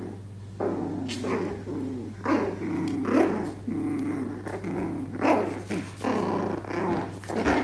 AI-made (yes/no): no